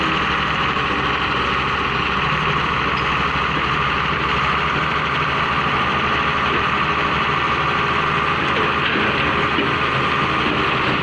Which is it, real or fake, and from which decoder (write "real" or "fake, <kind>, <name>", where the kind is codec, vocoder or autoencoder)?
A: real